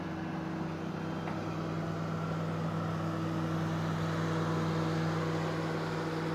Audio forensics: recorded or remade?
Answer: recorded